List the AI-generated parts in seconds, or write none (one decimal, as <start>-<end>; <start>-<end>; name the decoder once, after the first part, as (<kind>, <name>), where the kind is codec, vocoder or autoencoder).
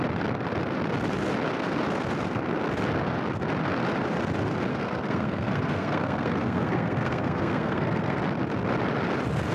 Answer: 4.7-8.2 (codec, SNAC)